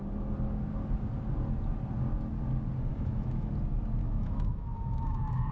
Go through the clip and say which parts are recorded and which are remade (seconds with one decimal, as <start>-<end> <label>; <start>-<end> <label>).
0.0-2.9 recorded; 2.9-3.5 remade; 3.5-4.0 recorded; 4.0-5.5 remade